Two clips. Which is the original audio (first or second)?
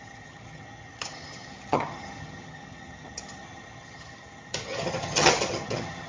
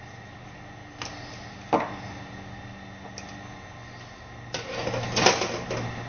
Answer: second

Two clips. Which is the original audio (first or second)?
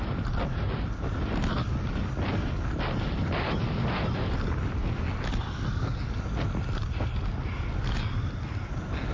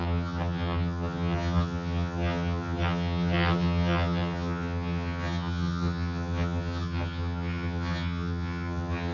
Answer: first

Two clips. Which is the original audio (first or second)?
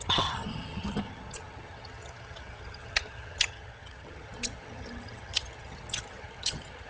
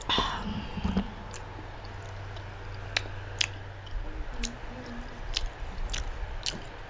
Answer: second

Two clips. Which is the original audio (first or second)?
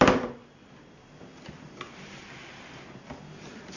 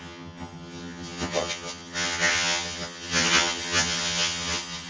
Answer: first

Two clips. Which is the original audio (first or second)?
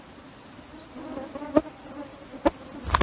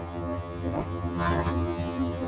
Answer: first